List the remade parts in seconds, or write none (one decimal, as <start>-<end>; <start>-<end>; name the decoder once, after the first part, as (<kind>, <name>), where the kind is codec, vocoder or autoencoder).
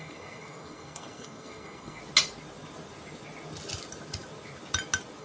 0.0-2.0 (codec, SNAC)